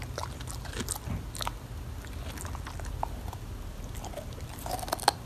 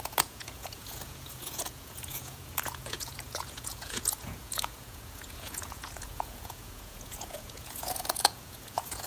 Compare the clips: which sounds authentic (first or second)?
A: first